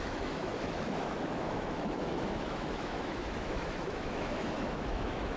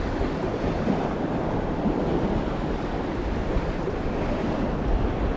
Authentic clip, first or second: second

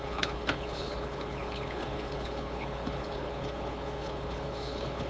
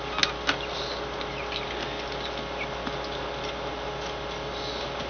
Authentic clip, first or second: second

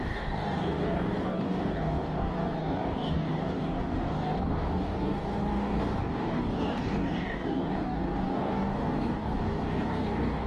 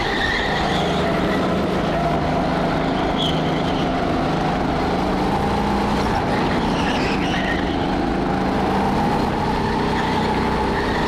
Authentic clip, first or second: second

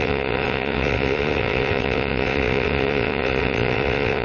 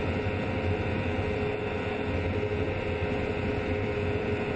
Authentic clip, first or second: second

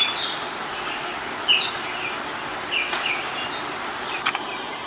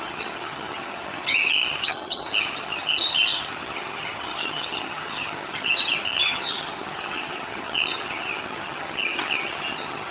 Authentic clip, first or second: first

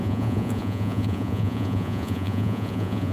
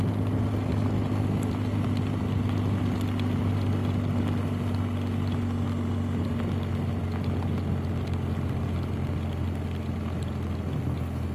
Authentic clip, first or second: second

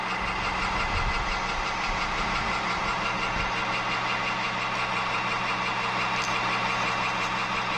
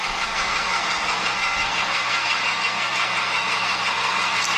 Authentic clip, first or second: first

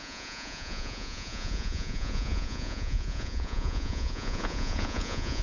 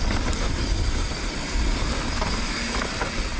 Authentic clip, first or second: second